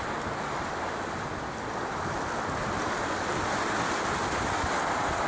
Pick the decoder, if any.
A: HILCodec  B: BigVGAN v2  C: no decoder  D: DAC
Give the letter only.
C